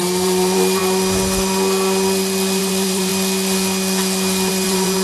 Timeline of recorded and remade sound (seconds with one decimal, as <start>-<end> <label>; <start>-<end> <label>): 0.0-0.8 remade; 0.8-2.6 recorded; 2.6-3.1 remade; 3.1-4.5 recorded; 4.5-5.0 remade